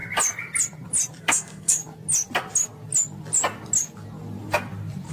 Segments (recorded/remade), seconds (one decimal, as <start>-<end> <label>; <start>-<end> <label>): 0.0-1.2 recorded; 1.2-1.8 remade; 1.8-5.1 recorded